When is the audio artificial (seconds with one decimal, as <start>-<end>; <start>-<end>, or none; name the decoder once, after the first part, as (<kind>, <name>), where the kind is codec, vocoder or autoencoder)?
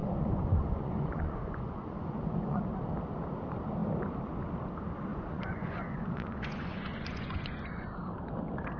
0.0-2.6 (vocoder, Vocos); 5.1-7.9